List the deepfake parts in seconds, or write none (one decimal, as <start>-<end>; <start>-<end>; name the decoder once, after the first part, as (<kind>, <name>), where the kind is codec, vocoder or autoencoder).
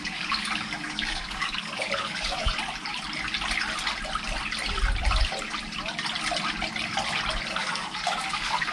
0.0-2.5 (codec, DAC); 7.5-8.7